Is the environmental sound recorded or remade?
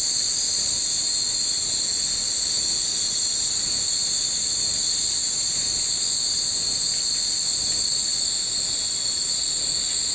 recorded